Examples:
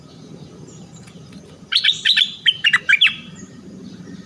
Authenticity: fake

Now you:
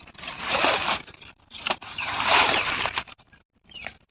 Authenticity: fake